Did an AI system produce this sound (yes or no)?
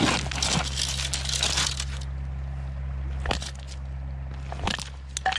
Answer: no